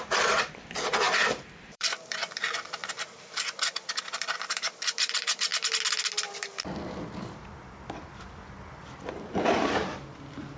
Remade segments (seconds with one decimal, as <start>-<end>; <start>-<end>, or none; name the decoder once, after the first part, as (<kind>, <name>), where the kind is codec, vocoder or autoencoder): 0.0-2.8 (vocoder, BigVGAN v2); 4.0-5.5; 6.2-10.6